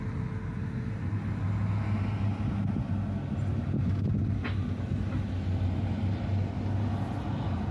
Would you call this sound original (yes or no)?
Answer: yes